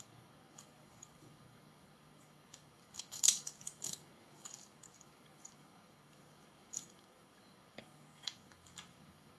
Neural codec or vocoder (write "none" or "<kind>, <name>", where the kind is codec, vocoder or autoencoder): codec, DAC